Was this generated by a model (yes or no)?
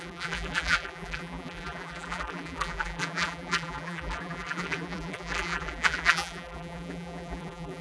yes